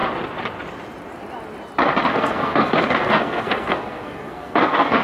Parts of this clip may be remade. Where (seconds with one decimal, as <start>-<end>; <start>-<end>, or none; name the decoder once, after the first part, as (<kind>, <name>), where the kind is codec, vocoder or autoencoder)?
2.1-5.0 (codec, SNAC)